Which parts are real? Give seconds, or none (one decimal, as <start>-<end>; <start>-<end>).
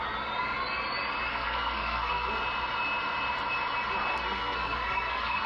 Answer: 0.0-1.3; 2.3-4.1